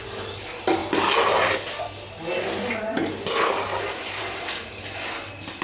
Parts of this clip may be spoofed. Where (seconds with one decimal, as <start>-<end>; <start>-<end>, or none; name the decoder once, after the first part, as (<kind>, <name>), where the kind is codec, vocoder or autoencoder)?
none